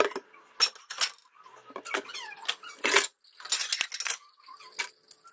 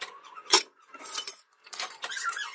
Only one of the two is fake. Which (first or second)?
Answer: second